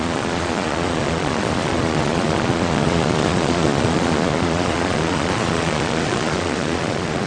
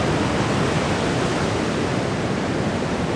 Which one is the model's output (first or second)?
first